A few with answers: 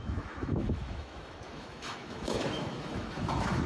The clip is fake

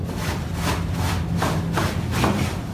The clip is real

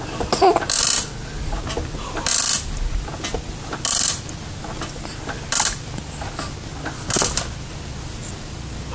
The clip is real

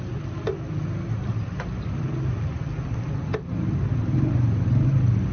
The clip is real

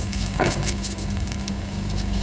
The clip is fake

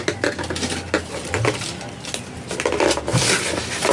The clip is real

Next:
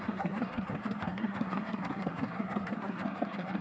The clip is fake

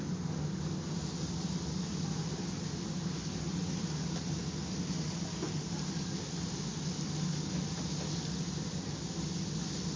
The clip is real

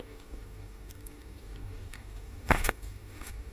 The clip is fake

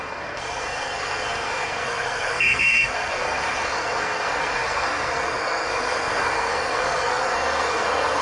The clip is fake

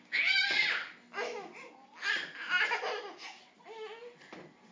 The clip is real